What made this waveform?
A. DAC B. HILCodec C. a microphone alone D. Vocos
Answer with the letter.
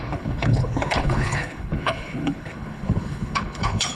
B